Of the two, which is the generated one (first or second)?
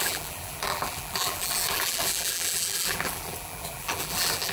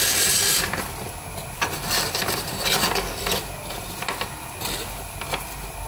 first